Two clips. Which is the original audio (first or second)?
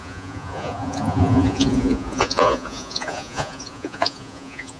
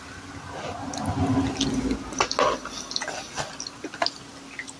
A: second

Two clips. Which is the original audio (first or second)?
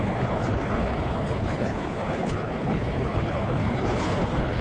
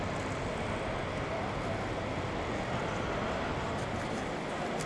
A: second